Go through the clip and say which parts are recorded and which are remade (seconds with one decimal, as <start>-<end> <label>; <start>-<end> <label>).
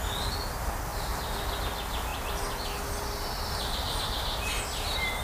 0.0-5.2 recorded